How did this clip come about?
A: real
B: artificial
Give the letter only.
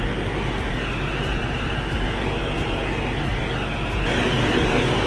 A